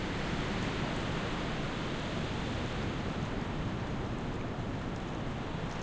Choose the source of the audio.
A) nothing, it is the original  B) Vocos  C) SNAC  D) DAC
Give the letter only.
A